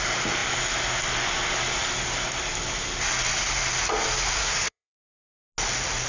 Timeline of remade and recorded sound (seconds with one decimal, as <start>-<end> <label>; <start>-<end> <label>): 0.0-4.4 recorded; 4.4-5.1 remade; 5.1-6.1 recorded